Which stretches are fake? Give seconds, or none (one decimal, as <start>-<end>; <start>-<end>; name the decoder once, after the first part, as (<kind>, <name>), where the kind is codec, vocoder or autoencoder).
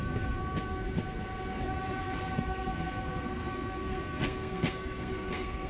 0.0-0.4 (codec, SNAC); 1.6-5.7